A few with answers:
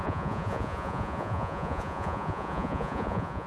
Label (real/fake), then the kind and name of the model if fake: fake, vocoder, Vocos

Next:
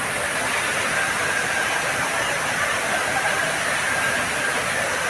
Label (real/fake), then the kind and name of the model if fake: real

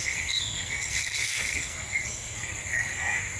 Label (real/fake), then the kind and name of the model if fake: fake, codec, SNAC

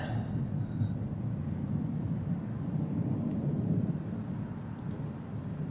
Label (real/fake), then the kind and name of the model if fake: real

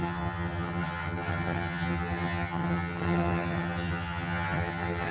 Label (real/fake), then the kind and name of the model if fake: fake, vocoder, HiFi-GAN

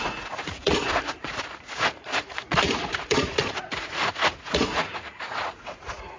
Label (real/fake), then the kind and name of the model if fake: fake, vocoder, Vocos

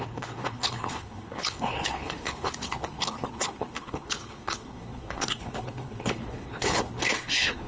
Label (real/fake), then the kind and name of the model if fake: fake, codec, HILCodec